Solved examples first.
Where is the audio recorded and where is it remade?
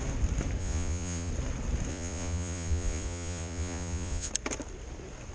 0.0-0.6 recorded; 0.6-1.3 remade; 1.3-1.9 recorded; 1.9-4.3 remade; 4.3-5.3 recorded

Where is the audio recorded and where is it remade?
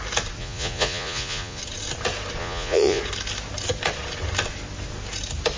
0.0-0.4 recorded; 0.4-1.6 remade; 1.6-2.4 recorded; 2.4-3.0 remade; 3.0-5.6 recorded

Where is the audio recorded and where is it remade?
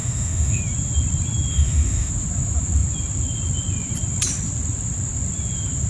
0.0-0.6 remade; 0.6-1.5 recorded; 1.5-2.1 remade; 2.1-5.9 recorded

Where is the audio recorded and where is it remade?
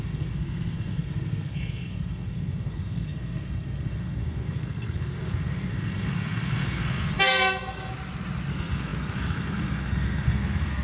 0.0-7.9 remade; 7.9-8.5 recorded; 8.5-10.8 remade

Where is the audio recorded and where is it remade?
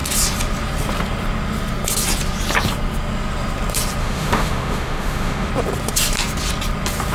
0.0-4.0 recorded; 4.0-5.5 remade; 5.5-7.1 recorded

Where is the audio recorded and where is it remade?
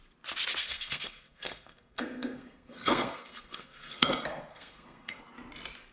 0.0-0.6 recorded; 0.6-4.1 remade; 4.1-4.5 recorded; 4.5-5.2 remade; 5.2-5.9 recorded